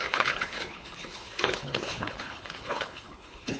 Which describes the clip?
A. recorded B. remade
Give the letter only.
B